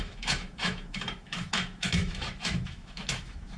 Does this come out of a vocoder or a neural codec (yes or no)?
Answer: yes